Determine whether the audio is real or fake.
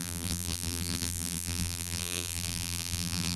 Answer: fake